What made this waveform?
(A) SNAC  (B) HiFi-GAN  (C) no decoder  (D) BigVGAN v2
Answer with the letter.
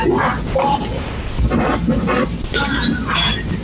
C